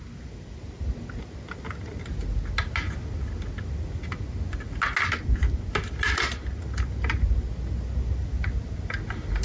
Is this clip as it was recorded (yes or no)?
yes